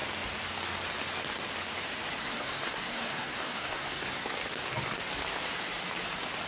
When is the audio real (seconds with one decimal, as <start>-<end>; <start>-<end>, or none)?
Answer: 0.0-2.2; 4.3-6.5